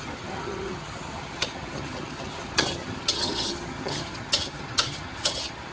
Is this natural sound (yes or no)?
no